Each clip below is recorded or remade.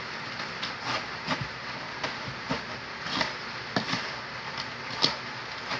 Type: recorded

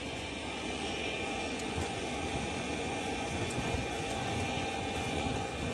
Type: remade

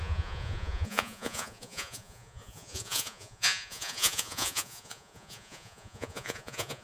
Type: remade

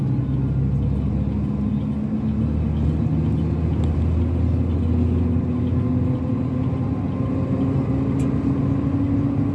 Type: recorded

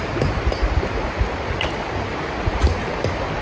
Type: recorded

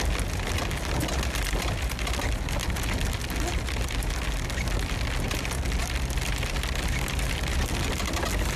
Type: recorded